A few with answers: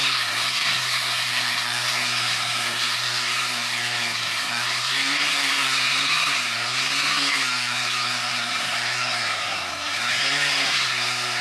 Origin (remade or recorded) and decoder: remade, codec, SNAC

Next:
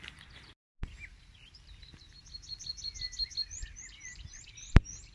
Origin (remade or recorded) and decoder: recorded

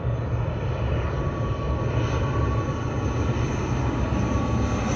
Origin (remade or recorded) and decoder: recorded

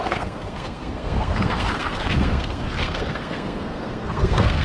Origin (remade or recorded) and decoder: remade, codec, SNAC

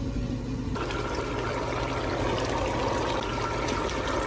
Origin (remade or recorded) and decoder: recorded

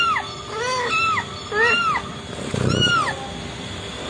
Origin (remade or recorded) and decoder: recorded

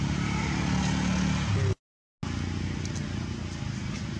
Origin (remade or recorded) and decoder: recorded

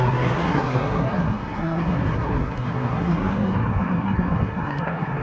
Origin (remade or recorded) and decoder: remade, codec, SNAC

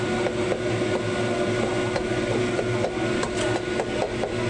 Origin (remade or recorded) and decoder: recorded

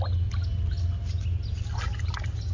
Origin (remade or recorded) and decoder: recorded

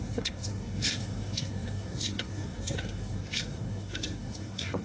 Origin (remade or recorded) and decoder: remade, codec, SNAC